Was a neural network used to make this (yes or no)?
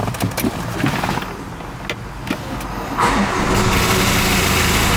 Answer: no